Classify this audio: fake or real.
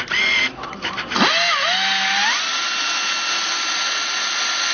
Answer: real